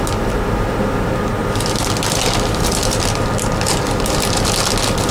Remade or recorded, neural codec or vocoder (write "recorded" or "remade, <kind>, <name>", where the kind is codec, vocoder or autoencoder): recorded